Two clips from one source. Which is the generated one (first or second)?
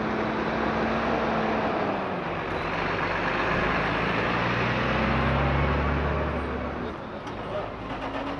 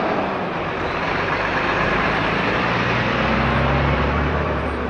second